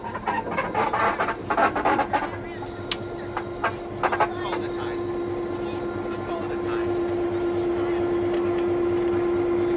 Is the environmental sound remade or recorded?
recorded